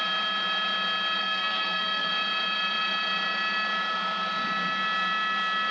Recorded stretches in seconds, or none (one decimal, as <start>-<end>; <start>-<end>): 0.0-1.2; 2.1-5.7